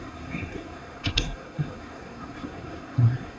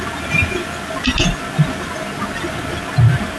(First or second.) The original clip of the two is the second